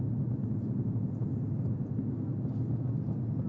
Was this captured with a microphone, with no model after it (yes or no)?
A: yes